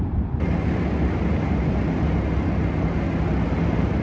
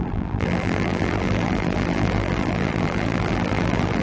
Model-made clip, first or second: second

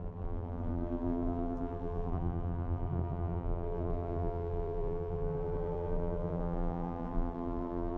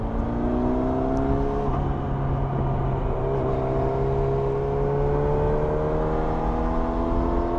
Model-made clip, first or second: first